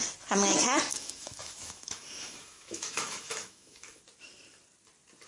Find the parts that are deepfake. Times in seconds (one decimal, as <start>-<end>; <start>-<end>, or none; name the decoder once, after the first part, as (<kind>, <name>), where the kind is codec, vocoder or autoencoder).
0.9-4.0 (autoencoder, DAC-VAE)